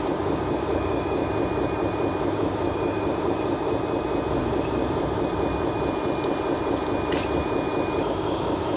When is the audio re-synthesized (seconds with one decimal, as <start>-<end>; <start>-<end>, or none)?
0.0-1.2; 2.3-3.7; 4.3-4.8; 8.1-8.8